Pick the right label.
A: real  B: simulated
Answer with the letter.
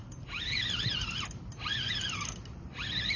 A